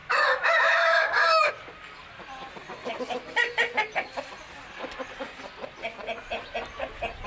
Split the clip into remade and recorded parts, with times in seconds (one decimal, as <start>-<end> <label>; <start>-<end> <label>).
0.0-1.5 remade; 1.5-7.3 recorded